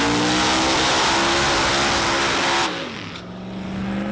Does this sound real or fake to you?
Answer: real